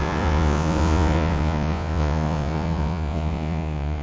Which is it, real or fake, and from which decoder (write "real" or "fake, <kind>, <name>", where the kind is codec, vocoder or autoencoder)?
fake, vocoder, Vocos